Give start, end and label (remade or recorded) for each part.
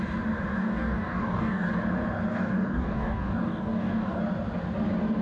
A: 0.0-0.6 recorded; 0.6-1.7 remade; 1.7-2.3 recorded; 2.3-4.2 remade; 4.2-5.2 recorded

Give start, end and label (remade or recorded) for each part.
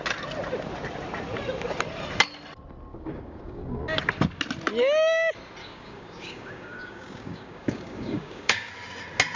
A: 0.0-2.9 recorded; 2.9-3.8 remade; 3.8-5.6 recorded; 5.6-8.7 remade; 8.7-9.4 recorded